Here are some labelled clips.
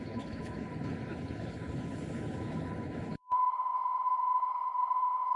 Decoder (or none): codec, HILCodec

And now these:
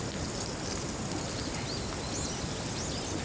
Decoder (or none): none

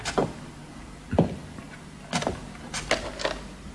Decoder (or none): none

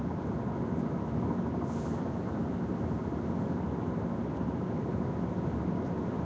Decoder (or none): none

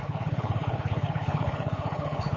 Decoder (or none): codec, HILCodec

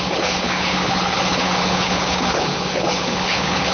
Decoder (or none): codec, HILCodec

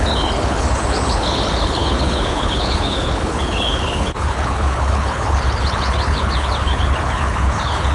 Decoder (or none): codec, HILCodec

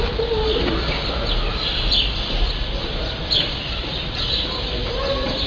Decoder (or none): none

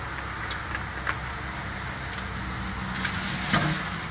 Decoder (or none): none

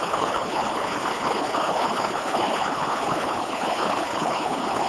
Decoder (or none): codec, HILCodec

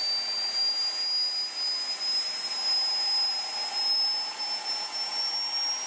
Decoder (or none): none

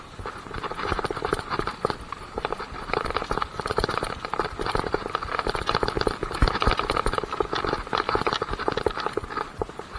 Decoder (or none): none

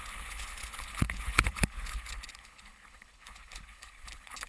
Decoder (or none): codec, HILCodec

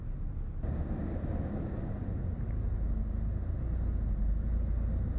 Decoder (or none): none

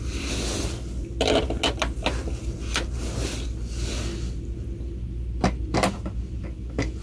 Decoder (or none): none